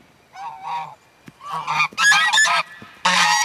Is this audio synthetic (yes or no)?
no